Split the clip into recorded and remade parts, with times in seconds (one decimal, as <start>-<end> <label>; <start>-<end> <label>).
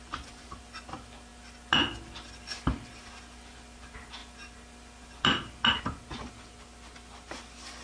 0.0-7.8 recorded